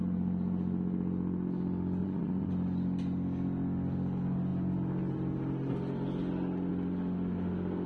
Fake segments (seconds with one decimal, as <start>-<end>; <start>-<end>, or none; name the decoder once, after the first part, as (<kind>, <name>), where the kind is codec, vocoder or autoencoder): 2.0-2.5 (vocoder, Vocos)